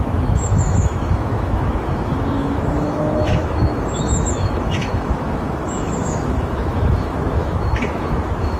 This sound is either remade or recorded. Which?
remade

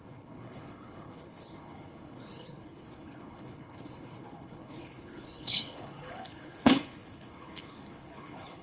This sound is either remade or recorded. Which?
remade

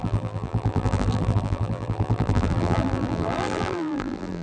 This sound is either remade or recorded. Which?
remade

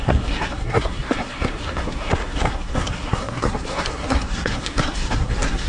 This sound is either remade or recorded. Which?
remade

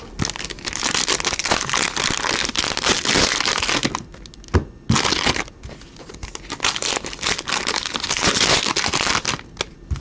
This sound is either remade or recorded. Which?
recorded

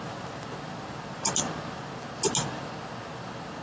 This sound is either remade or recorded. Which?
recorded